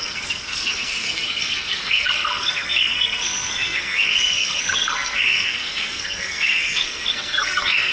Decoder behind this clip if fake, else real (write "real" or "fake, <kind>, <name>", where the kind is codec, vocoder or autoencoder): fake, codec, SNAC